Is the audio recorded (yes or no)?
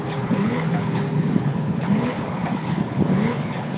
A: no